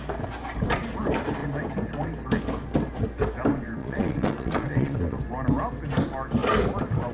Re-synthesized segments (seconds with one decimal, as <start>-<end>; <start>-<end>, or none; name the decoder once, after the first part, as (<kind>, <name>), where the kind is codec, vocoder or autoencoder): 3.8-5.2 (vocoder, WaveNeXt)